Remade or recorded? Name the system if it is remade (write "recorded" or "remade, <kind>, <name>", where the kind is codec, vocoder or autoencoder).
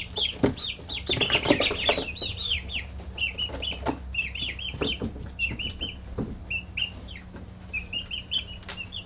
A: recorded